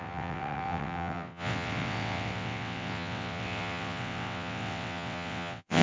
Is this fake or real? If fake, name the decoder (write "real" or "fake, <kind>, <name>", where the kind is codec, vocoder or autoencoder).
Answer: fake, vocoder, WaveNeXt